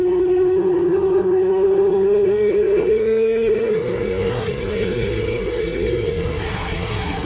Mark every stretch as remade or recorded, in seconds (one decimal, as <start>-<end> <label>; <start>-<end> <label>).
0.0-7.3 remade